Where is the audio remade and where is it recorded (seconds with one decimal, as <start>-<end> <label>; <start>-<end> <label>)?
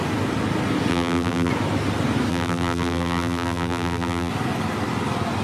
0.0-0.9 recorded; 0.9-1.5 remade; 1.5-2.3 recorded; 2.3-4.3 remade; 4.3-5.4 recorded